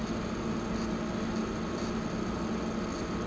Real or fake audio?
real